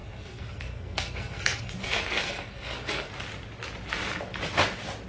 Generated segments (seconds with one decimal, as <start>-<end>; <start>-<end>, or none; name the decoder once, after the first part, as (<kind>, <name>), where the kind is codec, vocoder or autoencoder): 0.0-3.1 (codec, SNAC)